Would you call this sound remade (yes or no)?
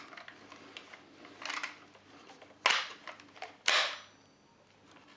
no